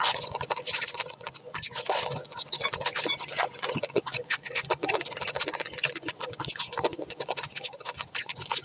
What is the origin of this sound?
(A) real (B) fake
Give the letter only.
B